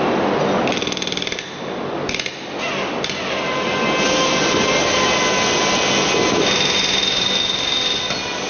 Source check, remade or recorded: recorded